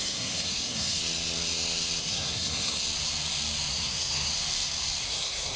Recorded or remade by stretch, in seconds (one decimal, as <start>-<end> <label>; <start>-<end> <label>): 0.0-1.0 remade; 1.0-2.0 recorded; 2.0-2.8 remade; 2.8-3.7 recorded; 3.7-4.3 remade; 4.3-5.0 recorded; 5.0-5.6 remade

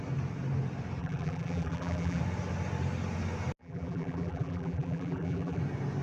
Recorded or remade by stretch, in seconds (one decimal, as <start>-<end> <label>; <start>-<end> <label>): 0.0-1.0 recorded; 1.0-2.2 remade; 2.2-3.6 recorded; 3.6-5.6 remade; 5.6-6.0 recorded

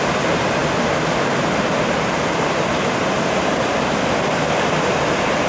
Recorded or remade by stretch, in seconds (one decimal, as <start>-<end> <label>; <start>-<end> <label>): 0.0-5.5 recorded

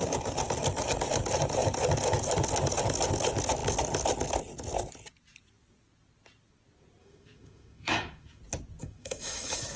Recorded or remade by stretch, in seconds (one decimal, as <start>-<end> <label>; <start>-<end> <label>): 0.0-7.0 recorded; 7.0-8.4 remade; 8.4-8.8 recorded; 8.8-9.8 remade

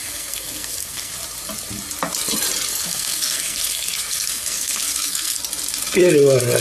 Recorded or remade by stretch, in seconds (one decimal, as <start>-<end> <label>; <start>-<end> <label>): 0.0-1.1 remade; 1.1-2.7 recorded; 2.7-5.4 remade; 5.4-6.6 recorded